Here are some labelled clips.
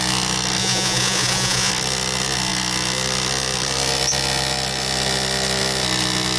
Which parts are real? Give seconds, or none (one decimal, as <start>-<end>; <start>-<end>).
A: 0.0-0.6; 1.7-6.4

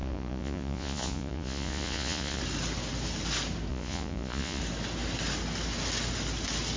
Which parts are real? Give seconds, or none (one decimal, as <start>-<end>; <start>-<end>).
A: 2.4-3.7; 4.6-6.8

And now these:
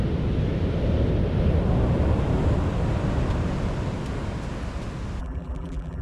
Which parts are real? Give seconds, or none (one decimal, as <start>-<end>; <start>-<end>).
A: 0.0-5.2